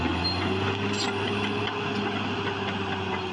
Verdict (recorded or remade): recorded